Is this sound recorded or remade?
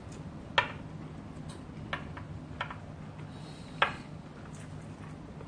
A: recorded